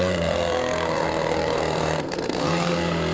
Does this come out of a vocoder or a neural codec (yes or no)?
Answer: yes